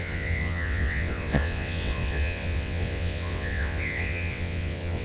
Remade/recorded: remade